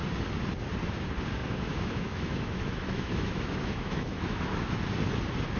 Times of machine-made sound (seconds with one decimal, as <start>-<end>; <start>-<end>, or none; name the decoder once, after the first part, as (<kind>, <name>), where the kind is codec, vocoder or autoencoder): 1.4-4.8 (autoencoder, DAC-VAE)